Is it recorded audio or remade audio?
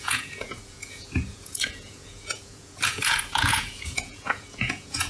remade